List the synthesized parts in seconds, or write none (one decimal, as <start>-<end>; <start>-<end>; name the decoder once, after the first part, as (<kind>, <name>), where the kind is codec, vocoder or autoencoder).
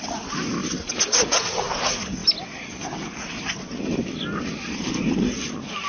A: none